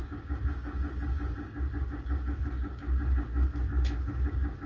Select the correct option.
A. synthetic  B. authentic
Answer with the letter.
A